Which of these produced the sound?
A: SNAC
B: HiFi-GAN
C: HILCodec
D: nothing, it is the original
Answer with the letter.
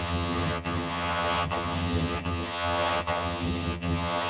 B